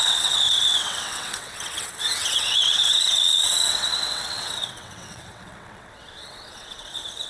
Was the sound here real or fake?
fake